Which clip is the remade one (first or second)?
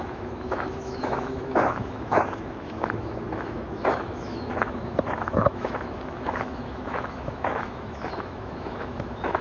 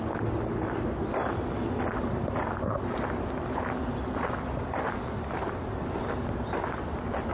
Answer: first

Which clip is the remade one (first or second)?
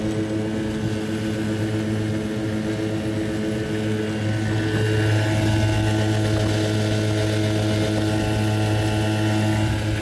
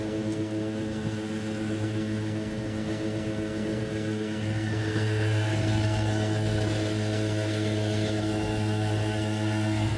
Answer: second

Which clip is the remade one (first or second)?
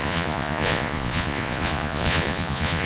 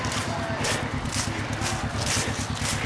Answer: first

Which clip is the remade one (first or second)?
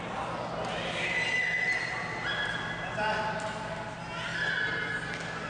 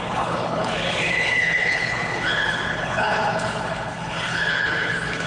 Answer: second